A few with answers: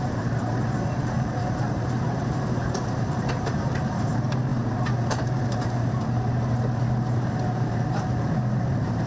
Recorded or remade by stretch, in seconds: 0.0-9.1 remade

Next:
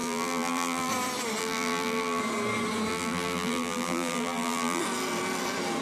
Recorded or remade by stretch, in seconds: 0.0-0.9 remade; 0.9-1.4 recorded; 1.4-2.2 remade; 2.2-2.9 recorded; 2.9-4.8 remade; 4.8-5.8 recorded

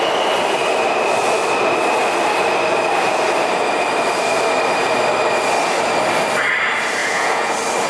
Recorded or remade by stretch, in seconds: 0.0-7.0 recorded; 7.0-7.5 remade; 7.5-7.9 recorded

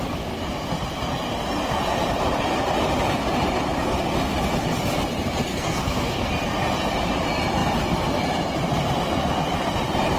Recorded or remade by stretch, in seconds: 0.0-5.5 recorded; 5.5-6.3 remade; 6.3-10.2 recorded

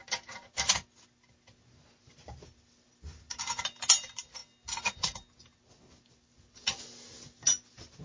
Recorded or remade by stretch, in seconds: 0.0-8.0 recorded

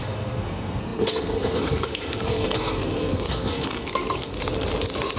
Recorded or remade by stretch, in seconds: 0.0-4.3 remade; 4.3-5.2 recorded

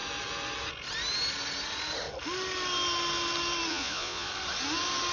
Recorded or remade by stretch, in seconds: 0.0-3.7 recorded; 3.7-4.3 remade; 4.3-5.1 recorded

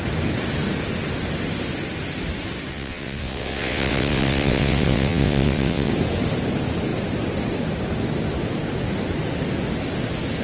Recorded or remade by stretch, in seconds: 0.0-2.7 recorded; 2.7-5.9 remade; 5.9-10.4 recorded